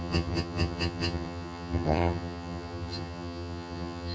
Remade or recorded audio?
remade